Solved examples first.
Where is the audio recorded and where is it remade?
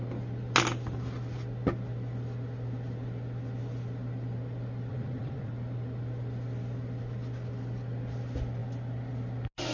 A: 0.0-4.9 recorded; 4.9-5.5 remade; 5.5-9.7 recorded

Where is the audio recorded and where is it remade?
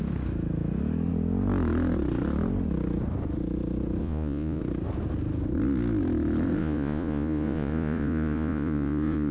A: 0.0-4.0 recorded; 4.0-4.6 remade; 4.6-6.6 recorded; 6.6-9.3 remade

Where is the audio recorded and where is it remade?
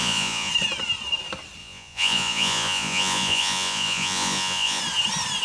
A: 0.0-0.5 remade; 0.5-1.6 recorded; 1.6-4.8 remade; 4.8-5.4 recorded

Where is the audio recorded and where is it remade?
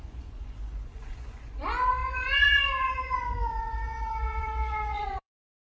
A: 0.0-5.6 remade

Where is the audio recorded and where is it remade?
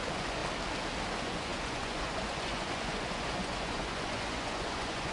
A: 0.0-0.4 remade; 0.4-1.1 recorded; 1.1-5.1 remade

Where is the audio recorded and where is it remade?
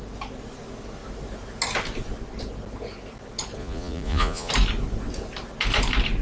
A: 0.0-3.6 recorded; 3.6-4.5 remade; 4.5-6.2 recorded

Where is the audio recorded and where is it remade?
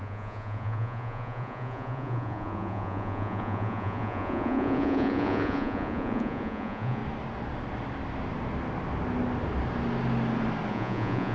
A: 0.0-7.0 remade; 7.0-10.7 recorded; 10.7-11.3 remade